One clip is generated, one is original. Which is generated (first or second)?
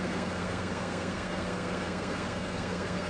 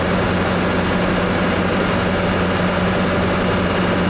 first